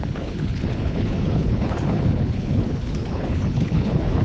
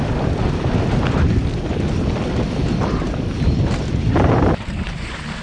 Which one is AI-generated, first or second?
first